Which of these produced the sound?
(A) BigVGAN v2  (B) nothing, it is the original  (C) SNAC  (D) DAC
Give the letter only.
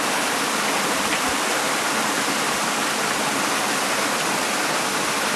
B